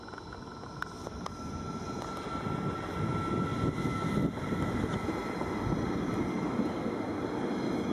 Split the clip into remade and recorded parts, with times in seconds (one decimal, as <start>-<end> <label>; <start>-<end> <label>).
0.0-5.2 recorded; 5.2-6.2 remade; 6.2-7.9 recorded